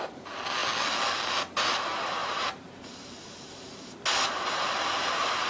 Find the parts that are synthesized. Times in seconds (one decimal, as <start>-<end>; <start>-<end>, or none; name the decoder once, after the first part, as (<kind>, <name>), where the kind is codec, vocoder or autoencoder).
2.2-4.0 (vocoder, BigVGAN v2)